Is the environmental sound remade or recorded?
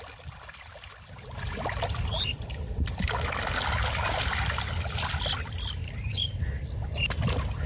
recorded